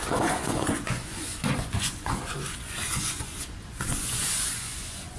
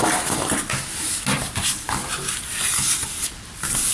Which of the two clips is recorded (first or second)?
second